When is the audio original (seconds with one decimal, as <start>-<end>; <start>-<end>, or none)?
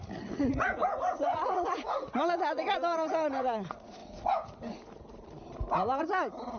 4.0-6.0